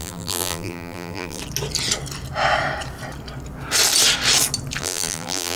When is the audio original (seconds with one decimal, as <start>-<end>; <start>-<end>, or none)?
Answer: 1.4-4.8